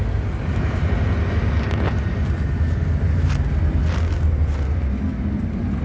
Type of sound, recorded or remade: recorded